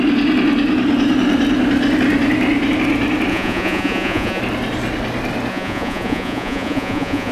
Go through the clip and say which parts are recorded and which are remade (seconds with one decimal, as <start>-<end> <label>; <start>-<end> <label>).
0.0-3.3 recorded; 3.3-4.4 remade; 4.4-5.5 recorded; 5.5-7.3 remade